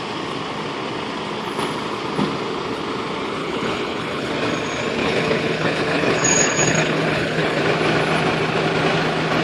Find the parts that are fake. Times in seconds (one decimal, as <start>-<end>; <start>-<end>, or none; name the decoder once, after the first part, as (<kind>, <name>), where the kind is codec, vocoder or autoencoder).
3.4-4.3 (codec, HILCodec); 5.0-7.6